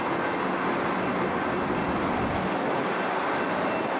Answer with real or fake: real